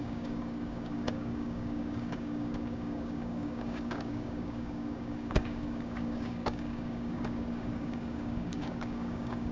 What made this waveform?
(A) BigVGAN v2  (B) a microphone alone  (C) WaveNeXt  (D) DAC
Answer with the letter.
D